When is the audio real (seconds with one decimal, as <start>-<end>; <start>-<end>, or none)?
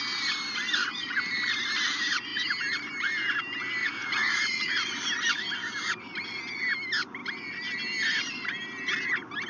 0.0-3.8; 5.0-9.5